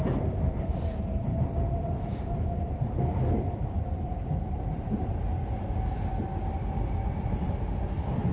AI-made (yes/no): yes